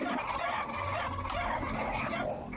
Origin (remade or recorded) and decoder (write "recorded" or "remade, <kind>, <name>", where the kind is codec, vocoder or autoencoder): recorded